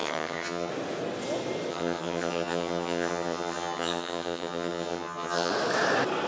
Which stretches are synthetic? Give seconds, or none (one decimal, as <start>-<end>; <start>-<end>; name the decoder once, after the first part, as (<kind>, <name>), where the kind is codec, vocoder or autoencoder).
0.0-0.7 (vocoder, HiFi-GAN); 1.7-5.5